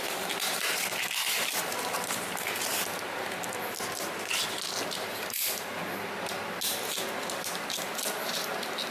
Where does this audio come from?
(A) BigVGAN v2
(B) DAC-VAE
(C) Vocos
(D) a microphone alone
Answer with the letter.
D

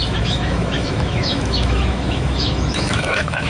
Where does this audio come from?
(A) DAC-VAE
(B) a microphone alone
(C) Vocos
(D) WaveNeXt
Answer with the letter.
A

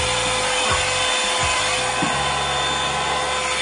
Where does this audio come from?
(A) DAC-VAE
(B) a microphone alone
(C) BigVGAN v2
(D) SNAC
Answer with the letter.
B